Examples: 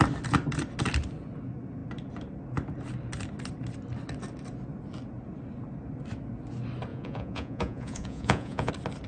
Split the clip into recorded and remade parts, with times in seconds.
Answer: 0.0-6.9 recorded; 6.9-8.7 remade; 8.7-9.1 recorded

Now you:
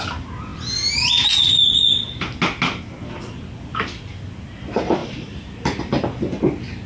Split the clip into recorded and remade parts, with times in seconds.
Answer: 0.0-5.0 recorded; 5.0-5.8 remade; 5.8-6.9 recorded